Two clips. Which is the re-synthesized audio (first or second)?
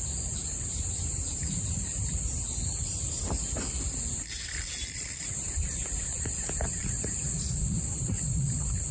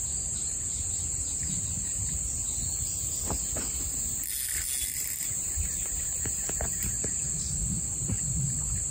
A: first